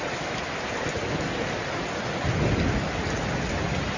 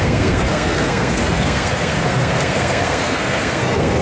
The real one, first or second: first